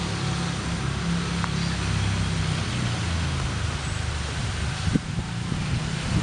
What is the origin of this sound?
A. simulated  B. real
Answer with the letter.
B